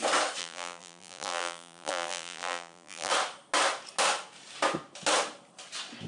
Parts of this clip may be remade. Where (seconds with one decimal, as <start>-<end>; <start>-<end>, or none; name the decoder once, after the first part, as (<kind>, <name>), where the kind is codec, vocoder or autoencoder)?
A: 0.4-3.1 (vocoder, BigVGAN v2)